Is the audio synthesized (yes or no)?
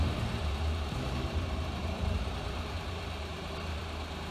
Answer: yes